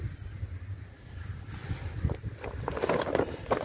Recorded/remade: recorded